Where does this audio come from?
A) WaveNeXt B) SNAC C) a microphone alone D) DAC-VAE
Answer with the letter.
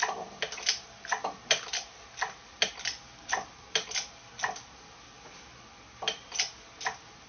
C